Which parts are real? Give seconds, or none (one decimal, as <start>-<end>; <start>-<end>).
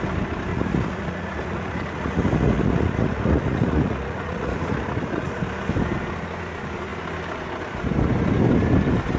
0.0-0.5; 5.4-9.2